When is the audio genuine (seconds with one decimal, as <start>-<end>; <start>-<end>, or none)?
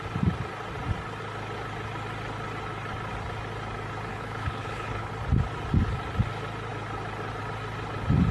0.0-4.1; 5.1-8.3